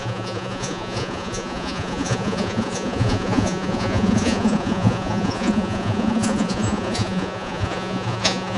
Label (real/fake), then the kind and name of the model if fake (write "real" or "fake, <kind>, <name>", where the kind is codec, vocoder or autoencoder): fake, vocoder, Vocos